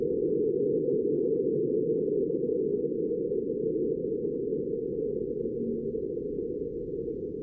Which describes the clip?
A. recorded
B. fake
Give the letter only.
A